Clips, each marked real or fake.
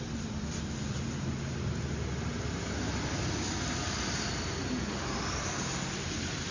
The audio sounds real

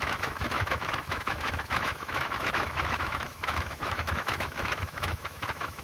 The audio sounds fake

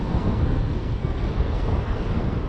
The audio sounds fake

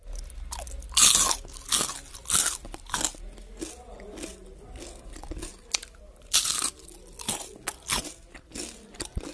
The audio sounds real